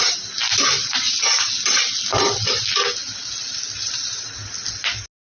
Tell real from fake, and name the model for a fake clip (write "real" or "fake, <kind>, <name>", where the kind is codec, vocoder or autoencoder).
real